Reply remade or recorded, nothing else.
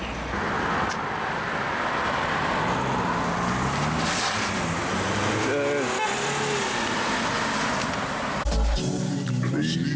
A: recorded